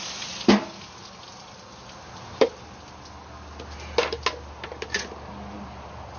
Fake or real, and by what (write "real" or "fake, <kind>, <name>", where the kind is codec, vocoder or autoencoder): real